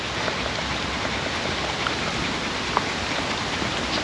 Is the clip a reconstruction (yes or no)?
no